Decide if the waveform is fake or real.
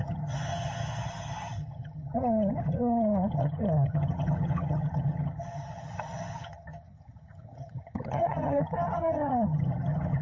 fake